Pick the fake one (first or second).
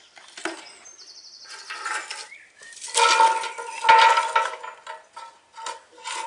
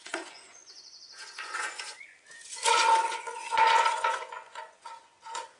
second